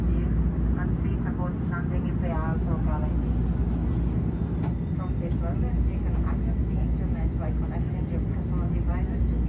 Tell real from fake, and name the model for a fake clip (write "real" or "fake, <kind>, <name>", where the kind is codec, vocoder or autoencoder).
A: real